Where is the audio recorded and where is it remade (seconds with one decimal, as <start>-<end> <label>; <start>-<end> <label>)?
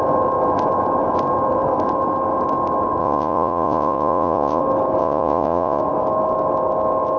0.0-3.0 recorded; 3.0-4.6 remade; 4.6-5.0 recorded; 5.0-5.8 remade; 5.8-7.2 recorded